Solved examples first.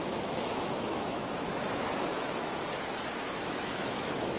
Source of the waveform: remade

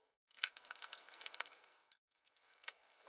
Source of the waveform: remade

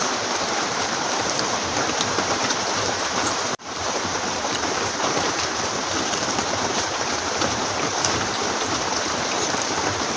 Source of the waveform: remade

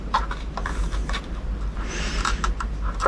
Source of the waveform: remade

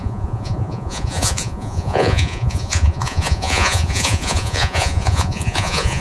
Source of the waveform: remade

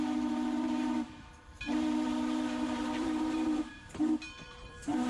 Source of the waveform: remade